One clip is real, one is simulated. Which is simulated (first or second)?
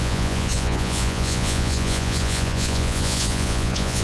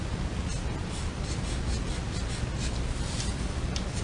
first